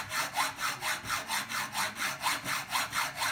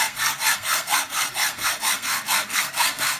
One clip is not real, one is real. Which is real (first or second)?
first